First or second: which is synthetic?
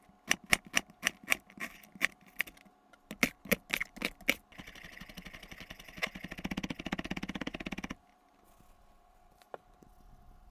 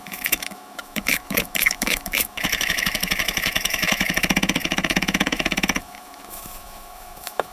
second